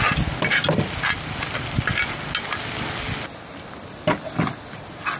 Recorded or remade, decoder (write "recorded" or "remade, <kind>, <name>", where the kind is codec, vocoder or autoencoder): recorded